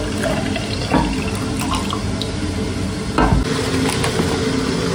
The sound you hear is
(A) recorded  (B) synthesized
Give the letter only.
A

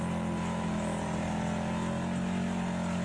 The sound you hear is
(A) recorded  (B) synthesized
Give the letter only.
A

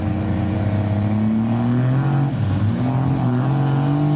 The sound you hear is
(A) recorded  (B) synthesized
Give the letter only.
A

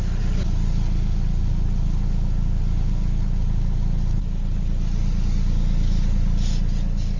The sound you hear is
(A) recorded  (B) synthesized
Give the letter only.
A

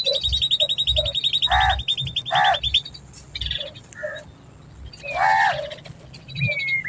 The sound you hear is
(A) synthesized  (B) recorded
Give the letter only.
B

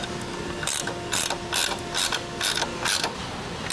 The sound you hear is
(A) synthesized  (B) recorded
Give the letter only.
B